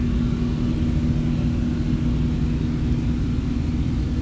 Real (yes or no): yes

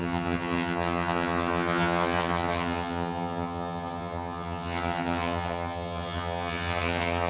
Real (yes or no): no